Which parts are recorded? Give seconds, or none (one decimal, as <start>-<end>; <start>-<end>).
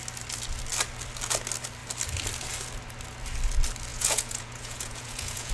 0.0-3.9